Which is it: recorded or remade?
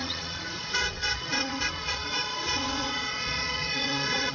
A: remade